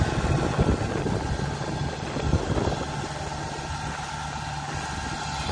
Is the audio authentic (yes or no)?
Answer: yes